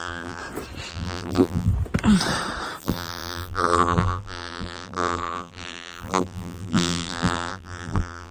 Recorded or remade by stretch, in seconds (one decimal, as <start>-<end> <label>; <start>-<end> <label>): 0.0-0.4 remade; 0.4-0.9 recorded; 0.9-1.7 remade; 1.7-2.8 recorded; 2.8-8.3 remade